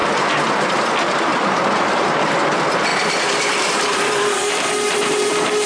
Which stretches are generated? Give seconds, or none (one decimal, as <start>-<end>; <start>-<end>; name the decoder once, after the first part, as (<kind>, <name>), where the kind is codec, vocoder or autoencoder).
0.0-0.8 (vocoder, BigVGAN v2); 1.3-2.3; 2.9-5.3